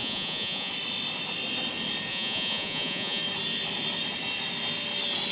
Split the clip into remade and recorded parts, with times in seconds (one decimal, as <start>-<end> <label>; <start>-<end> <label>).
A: 0.0-0.7 remade; 0.7-2.1 recorded; 2.1-3.2 remade; 3.2-5.3 recorded